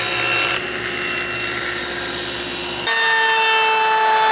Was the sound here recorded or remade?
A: recorded